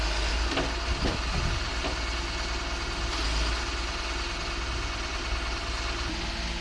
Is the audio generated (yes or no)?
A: no